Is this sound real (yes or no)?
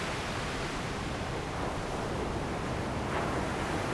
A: yes